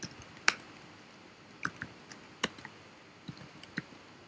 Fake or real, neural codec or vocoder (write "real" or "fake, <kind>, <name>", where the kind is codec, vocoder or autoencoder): real